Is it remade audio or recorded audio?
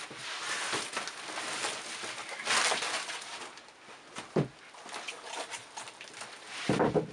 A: recorded